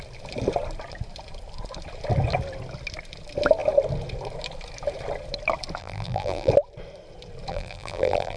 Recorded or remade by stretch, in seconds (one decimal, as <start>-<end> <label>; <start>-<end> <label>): 0.0-5.8 recorded; 5.8-6.5 remade; 6.5-7.5 recorded; 7.5-8.4 remade